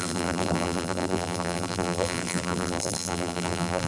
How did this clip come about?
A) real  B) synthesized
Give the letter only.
B